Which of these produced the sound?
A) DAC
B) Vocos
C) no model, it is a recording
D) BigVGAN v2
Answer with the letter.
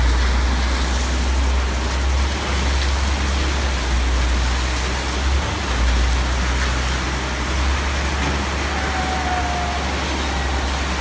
C